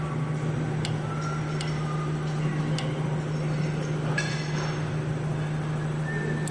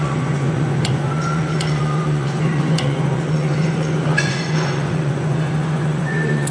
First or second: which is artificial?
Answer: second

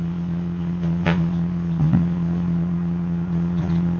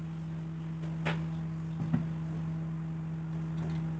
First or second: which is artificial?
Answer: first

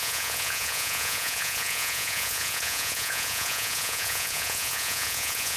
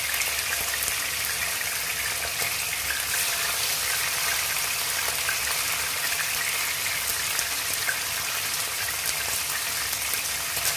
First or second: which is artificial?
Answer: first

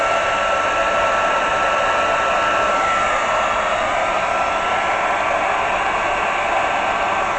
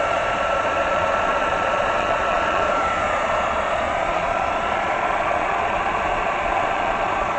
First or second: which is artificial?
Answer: second